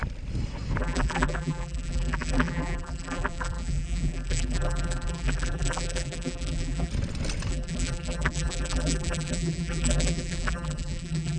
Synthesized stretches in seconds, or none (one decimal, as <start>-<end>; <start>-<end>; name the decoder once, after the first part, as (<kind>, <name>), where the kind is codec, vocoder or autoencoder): 0.8-6.9 (vocoder, BigVGAN v2); 7.5-11.4